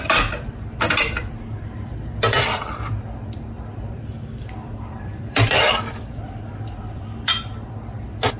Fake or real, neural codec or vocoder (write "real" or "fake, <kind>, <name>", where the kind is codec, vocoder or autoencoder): fake, vocoder, BigVGAN v2